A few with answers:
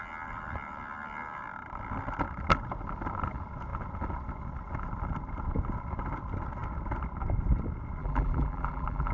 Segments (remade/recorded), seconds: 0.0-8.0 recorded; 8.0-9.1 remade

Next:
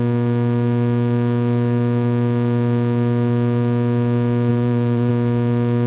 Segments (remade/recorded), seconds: 0.0-4.5 recorded; 4.5-5.1 remade; 5.1-5.9 recorded

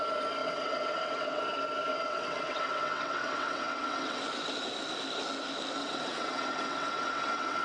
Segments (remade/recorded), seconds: 0.0-0.4 recorded; 0.4-1.4 remade; 1.4-1.9 recorded; 1.9-4.2 remade; 4.2-5.8 recorded; 5.8-7.6 remade

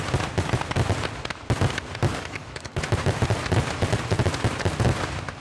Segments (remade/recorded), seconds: 0.0-2.1 recorded; 2.1-2.8 remade; 2.8-5.4 recorded

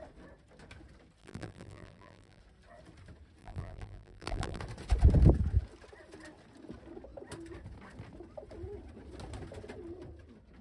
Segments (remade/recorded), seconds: 0.0-1.2 recorded; 1.2-2.4 remade; 2.4-3.4 recorded; 3.4-4.6 remade; 4.6-10.6 recorded